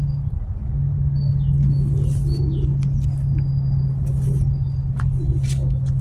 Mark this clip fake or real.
real